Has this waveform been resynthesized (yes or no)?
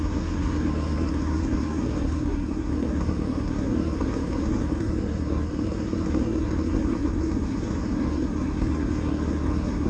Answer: yes